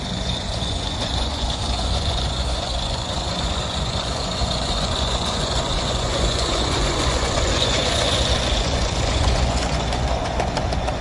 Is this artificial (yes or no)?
yes